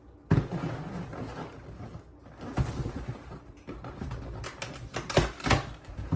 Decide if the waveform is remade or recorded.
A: recorded